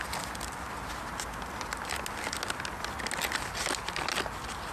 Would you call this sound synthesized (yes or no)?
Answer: no